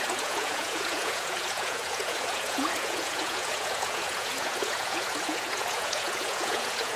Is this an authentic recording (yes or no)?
no